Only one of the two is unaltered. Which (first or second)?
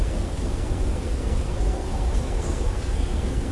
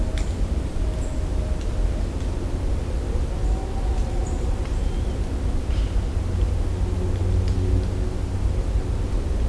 second